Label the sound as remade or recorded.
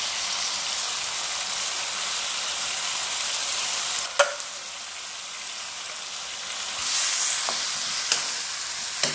recorded